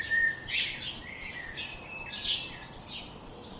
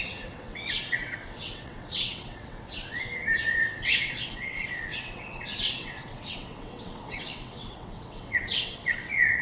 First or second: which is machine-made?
second